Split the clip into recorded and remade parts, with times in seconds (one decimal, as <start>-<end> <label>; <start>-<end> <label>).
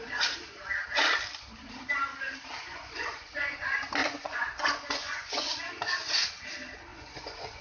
0.0-2.7 recorded; 2.7-3.6 remade; 3.6-4.0 recorded; 4.0-5.5 remade; 5.5-6.9 recorded; 6.9-7.6 remade